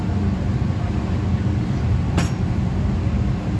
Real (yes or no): yes